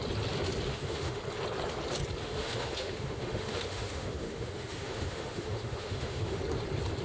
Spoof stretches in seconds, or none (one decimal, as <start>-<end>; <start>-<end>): 0.7-1.2; 2.2-6.4